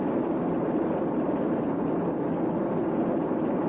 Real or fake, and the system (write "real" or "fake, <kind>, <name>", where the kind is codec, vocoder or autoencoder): real